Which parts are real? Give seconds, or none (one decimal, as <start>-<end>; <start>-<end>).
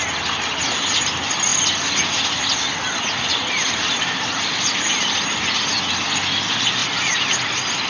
0.0-1.5; 4.9-6.8